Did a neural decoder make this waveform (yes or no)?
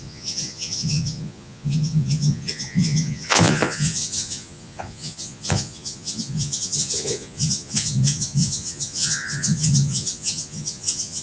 yes